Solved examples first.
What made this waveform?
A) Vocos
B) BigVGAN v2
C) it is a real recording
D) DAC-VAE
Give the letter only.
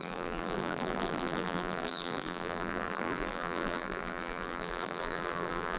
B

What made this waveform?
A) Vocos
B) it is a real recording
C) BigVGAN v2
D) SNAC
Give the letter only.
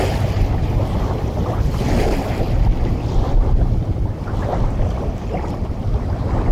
B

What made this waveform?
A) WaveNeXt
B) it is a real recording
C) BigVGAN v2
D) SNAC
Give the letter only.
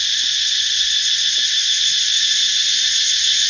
B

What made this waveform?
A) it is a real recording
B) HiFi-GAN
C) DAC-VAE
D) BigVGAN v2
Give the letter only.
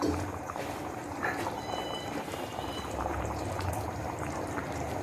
D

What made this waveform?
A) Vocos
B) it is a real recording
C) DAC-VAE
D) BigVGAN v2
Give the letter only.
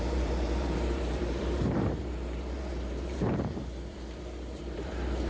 D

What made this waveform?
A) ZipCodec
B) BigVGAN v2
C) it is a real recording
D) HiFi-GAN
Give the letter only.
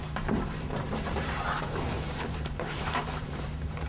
B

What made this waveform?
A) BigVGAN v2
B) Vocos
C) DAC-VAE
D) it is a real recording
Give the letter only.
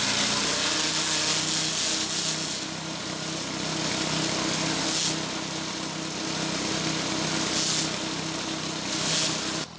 D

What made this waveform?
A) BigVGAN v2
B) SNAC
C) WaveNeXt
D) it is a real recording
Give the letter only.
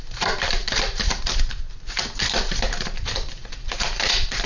A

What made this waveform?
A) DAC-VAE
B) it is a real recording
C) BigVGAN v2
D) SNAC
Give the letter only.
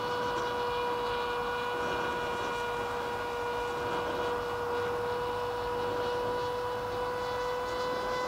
B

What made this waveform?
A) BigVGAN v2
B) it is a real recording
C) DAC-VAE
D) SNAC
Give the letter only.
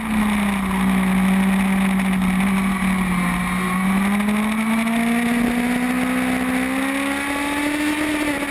B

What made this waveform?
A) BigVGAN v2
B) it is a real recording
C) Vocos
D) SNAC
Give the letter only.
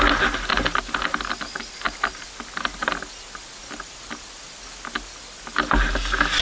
B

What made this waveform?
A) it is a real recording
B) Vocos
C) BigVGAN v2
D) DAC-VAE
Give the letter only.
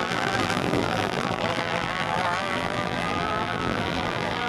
C